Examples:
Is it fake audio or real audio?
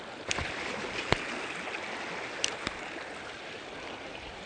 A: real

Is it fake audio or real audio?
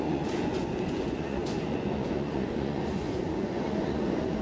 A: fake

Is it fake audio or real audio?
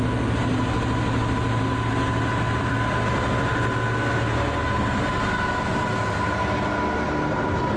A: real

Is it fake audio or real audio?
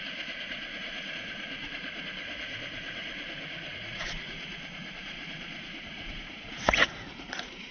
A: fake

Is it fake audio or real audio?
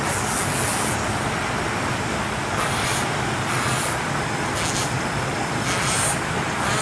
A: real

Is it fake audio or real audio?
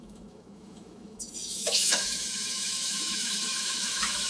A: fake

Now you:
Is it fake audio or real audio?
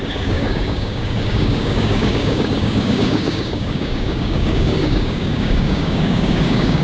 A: fake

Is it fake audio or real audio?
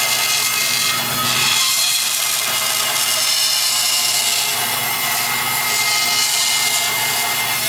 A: real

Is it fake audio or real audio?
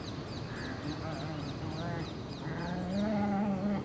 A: real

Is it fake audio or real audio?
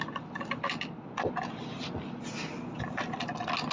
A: real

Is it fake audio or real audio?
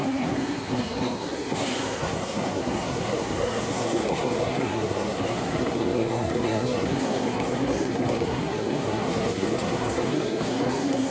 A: fake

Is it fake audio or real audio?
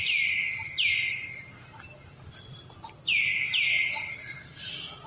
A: real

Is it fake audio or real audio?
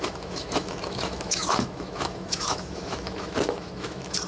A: fake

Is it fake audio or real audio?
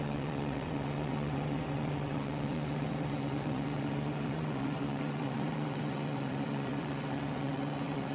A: fake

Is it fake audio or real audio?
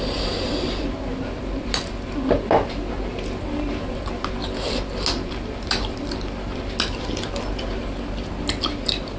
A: real